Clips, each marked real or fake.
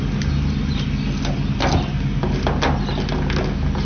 real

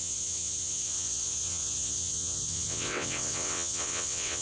fake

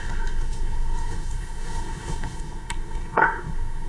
fake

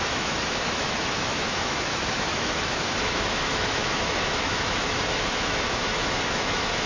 fake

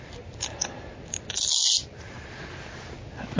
real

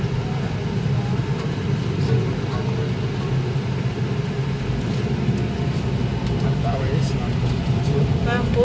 real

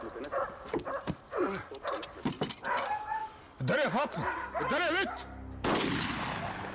real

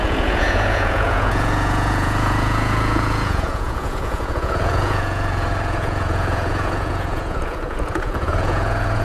fake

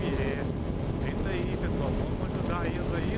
real